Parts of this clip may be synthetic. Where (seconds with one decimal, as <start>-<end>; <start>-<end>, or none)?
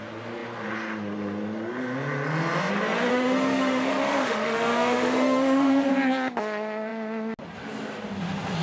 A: 3.1-5.9